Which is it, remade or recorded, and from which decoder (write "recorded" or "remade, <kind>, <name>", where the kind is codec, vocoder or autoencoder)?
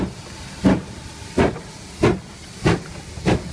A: recorded